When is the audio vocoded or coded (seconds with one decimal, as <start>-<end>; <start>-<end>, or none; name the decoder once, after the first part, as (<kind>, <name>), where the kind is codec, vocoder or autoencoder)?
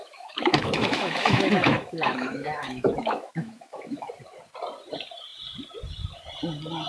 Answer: 0.0-4.1 (autoencoder, DAC-VAE)